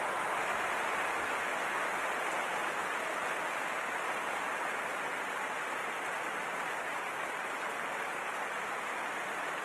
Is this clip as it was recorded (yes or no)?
yes